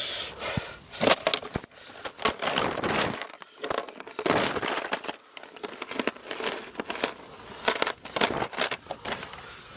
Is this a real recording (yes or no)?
yes